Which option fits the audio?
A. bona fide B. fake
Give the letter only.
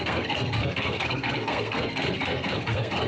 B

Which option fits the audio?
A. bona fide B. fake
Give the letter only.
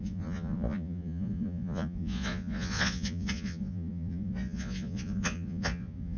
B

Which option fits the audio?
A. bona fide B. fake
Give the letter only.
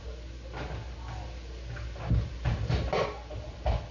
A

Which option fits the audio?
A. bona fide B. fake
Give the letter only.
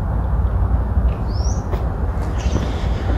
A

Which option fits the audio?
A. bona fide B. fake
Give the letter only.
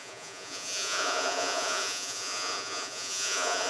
B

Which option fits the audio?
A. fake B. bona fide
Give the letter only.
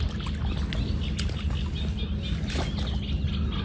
B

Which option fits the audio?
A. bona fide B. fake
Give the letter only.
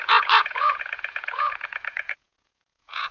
B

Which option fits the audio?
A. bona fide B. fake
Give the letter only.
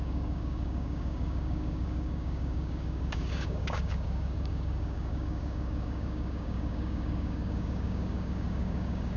B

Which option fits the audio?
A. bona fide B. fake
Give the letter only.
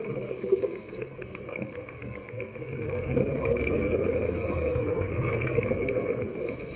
B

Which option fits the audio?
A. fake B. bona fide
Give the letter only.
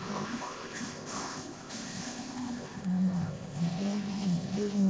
A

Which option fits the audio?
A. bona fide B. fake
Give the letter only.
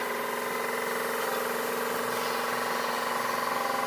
A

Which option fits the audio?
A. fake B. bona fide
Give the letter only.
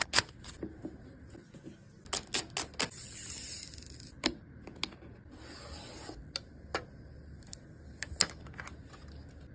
B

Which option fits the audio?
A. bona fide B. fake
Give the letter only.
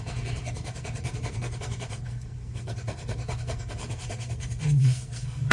B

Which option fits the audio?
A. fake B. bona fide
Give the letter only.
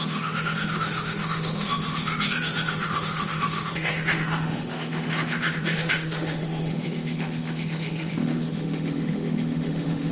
A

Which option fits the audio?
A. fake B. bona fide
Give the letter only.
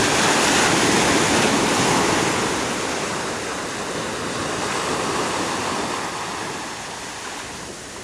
B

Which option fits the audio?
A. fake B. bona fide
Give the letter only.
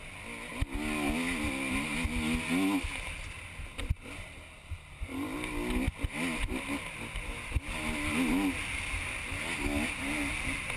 B